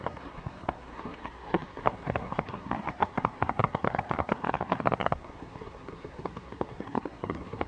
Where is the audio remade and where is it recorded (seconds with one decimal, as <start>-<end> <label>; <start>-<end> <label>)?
0.0-7.7 remade